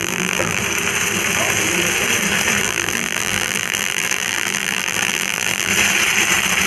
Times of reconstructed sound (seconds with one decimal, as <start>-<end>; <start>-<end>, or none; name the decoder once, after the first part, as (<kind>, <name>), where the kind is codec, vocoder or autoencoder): 0.0-0.6 (vocoder, BigVGAN v2); 2.6-5.7